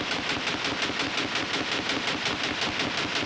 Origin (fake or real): real